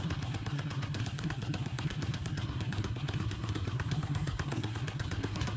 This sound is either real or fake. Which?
fake